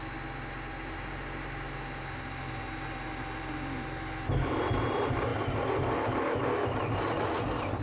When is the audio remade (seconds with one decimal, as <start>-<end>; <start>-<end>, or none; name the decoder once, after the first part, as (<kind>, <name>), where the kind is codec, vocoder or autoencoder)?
none